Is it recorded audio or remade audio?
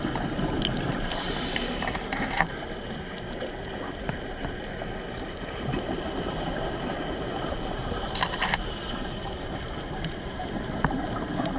remade